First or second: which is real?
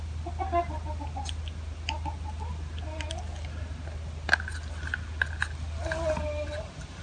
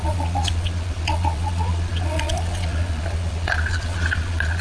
first